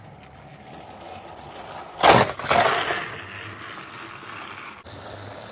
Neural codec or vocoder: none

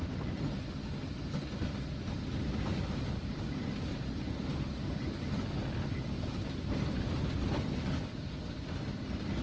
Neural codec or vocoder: none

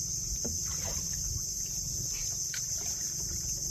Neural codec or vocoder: none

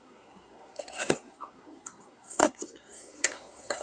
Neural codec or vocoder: codec, SNAC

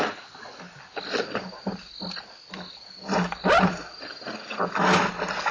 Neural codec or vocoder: none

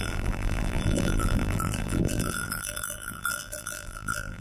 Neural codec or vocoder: vocoder, BigVGAN v2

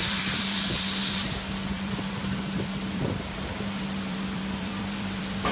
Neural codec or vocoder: vocoder, BigVGAN v2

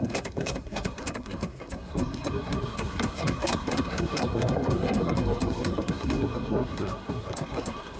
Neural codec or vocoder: codec, SNAC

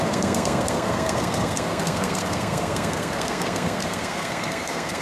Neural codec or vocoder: codec, SNAC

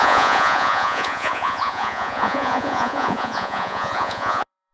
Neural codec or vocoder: vocoder, Vocos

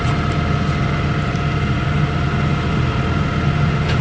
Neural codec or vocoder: none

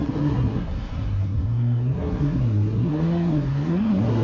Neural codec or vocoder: codec, SNAC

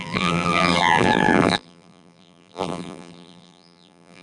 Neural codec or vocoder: vocoder, BigVGAN v2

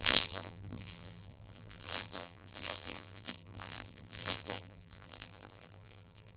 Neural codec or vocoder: vocoder, BigVGAN v2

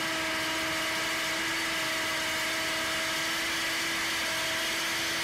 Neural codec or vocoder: none